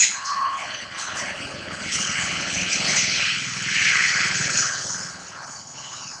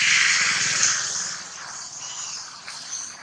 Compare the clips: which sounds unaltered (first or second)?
second